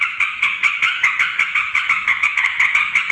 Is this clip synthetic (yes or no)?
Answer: yes